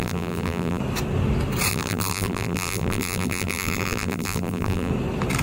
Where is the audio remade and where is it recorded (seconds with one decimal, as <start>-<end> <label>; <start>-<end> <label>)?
0.0-0.8 remade; 0.8-1.7 recorded; 1.7-4.9 remade; 4.9-5.4 recorded